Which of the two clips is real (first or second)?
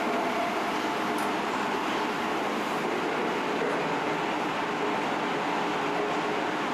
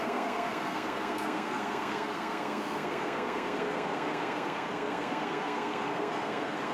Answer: first